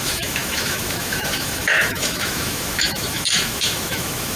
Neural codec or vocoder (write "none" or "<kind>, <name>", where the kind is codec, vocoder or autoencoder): autoencoder, DAC-VAE